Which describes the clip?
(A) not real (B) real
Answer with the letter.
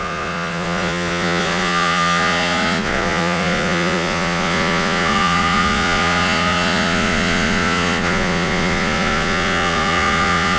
A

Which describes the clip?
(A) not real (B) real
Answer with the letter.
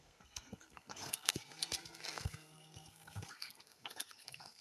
A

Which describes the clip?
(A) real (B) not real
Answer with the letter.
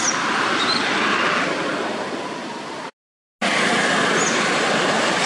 A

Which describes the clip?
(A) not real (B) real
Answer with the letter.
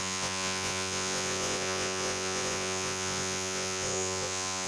A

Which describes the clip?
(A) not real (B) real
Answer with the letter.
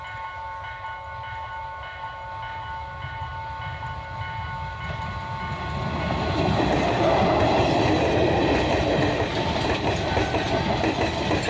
B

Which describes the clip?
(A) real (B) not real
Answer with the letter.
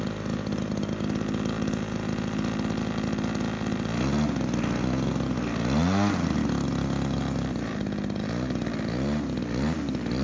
A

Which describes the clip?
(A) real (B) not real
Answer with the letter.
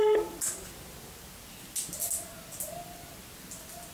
A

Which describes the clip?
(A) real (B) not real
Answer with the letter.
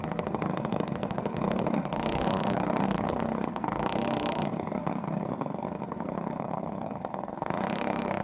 B